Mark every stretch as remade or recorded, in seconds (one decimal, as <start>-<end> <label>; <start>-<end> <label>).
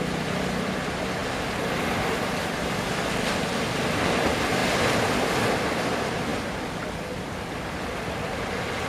0.0-8.9 recorded